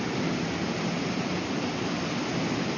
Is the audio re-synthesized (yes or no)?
no